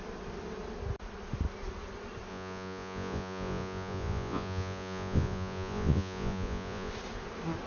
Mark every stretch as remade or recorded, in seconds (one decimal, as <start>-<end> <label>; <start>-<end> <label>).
0.0-2.3 recorded; 2.3-6.9 remade; 6.9-7.7 recorded